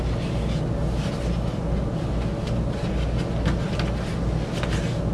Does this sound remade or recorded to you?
recorded